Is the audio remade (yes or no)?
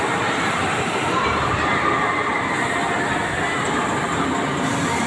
no